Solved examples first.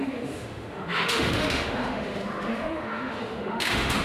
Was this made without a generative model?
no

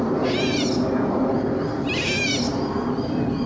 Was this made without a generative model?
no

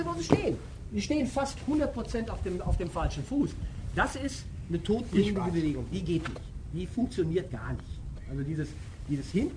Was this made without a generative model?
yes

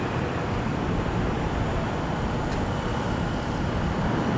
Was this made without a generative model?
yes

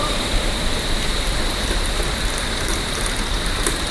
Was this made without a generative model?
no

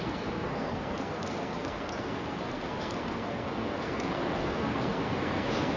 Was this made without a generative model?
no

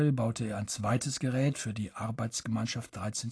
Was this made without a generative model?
yes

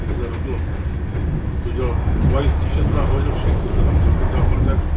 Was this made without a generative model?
yes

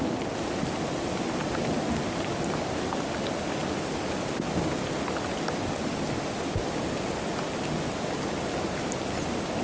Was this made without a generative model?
yes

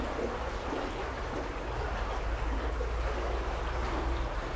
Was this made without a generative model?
yes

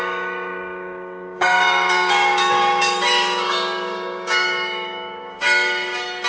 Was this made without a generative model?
no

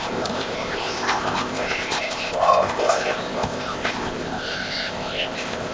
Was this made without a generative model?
no